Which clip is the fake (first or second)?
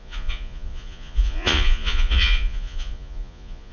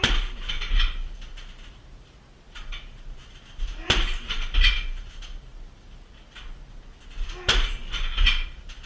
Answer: first